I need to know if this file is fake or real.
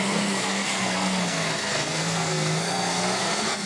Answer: fake